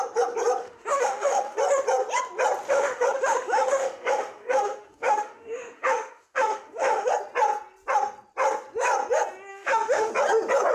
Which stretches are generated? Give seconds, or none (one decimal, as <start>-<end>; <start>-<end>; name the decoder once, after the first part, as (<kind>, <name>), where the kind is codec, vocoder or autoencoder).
0.6-1.6 (autoencoder, DAC-VAE); 2.7-7.1; 9.5-10.1